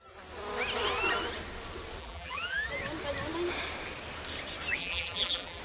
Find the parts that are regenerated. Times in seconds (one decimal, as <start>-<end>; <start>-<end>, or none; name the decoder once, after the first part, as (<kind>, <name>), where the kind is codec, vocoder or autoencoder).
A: 2.0-2.7 (vocoder, BigVGAN v2); 4.8-5.6